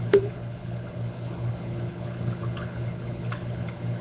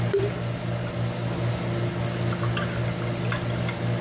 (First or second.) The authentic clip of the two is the second